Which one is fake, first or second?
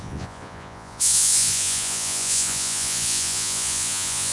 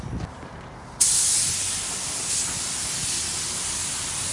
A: first